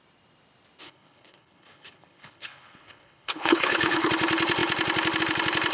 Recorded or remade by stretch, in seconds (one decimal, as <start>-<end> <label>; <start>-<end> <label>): 0.0-0.8 recorded; 0.8-4.1 remade; 4.1-5.7 recorded